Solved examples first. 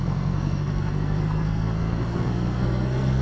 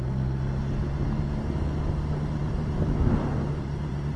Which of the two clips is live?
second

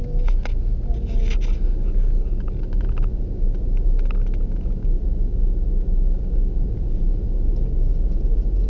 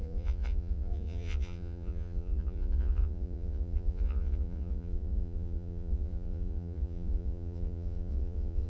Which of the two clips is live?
first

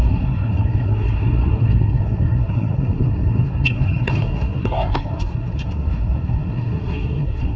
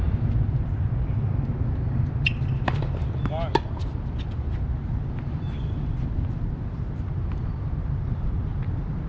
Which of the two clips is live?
second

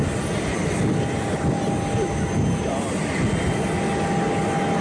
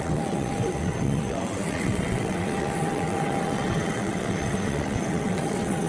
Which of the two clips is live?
first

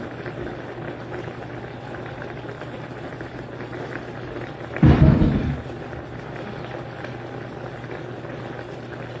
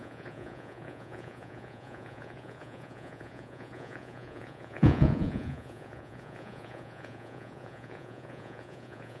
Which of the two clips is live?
first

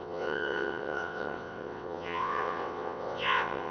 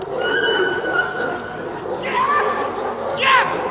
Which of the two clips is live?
second